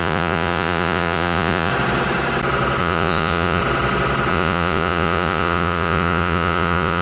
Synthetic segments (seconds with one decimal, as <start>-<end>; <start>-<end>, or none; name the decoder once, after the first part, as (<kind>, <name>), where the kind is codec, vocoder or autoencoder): 0.0-1.7 (vocoder, Vocos); 2.8-3.6; 4.3-7.0